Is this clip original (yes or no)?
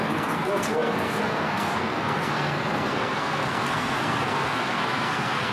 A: no